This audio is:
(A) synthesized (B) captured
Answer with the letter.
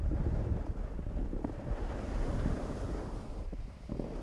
A